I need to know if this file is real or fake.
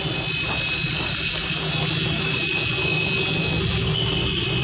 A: real